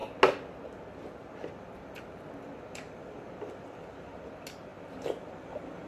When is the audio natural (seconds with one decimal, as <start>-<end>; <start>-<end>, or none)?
0.0-5.9